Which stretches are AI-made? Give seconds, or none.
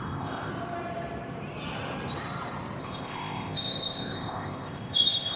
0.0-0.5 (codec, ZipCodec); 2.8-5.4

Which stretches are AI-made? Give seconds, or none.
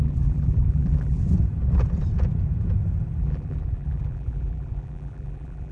0.0-1.2 (vocoder, BigVGAN v2); 3.2-5.7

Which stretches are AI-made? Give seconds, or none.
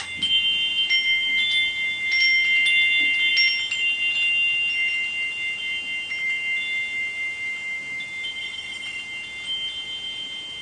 8.4-9.0 (vocoder, WaveNeXt)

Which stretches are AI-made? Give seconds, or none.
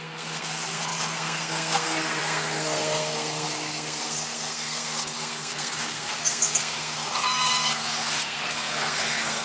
0.0-9.4 (codec, SNAC)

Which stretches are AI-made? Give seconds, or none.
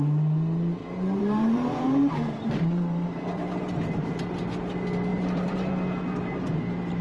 0.8-4.3 (vocoder, BigVGAN v2); 5.1-5.7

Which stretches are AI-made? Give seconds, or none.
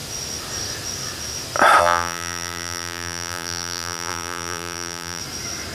1.8-5.2 (vocoder, BigVGAN v2)